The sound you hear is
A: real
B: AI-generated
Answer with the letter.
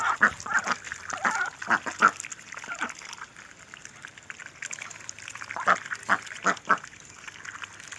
A